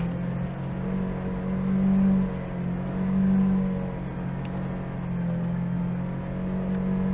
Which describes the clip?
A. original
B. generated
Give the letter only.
A